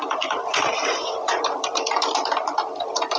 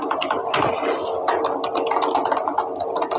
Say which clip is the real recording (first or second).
second